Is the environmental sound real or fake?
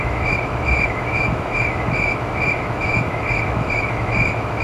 fake